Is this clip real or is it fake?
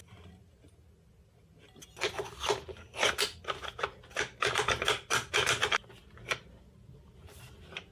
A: real